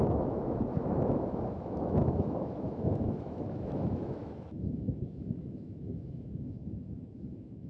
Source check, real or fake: fake